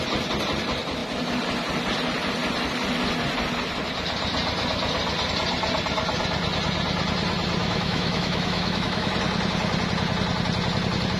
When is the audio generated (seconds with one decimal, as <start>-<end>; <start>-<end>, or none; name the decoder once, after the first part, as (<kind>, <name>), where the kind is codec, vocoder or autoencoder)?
7.6-9.1 (autoencoder, DAC-VAE)